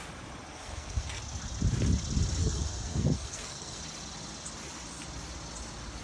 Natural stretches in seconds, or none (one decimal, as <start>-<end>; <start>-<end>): 0.0-0.5; 1.2-2.4; 3.8-6.0